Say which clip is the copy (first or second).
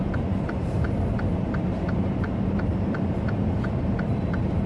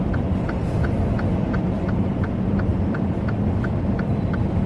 first